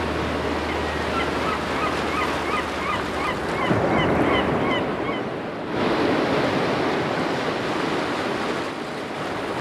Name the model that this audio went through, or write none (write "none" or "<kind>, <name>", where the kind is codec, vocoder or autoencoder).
none